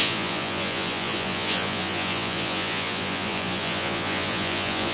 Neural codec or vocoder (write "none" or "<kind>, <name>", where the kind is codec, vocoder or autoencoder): vocoder, Vocos